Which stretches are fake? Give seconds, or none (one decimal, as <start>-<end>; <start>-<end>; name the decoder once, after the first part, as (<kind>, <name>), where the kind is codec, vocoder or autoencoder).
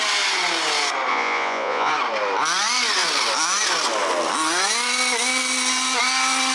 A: 1.1-1.9 (vocoder, Vocos)